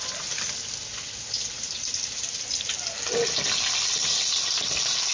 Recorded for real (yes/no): yes